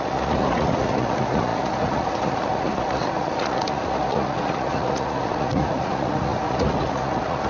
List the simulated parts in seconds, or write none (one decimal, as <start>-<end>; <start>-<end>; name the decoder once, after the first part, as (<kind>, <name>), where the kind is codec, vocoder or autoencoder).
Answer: 0.0-7.5 (vocoder, Vocos)